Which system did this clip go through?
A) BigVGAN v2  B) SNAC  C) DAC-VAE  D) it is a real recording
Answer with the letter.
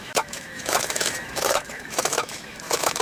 C